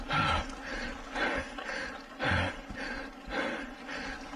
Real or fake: real